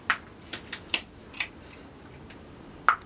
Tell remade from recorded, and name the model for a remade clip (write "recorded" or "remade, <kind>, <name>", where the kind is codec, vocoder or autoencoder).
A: remade, vocoder, BigVGAN v2